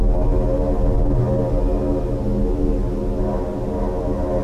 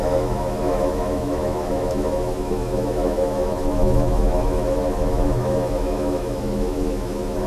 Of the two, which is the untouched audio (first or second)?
first